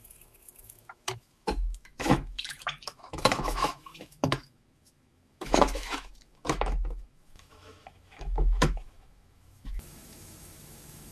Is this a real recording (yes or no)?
no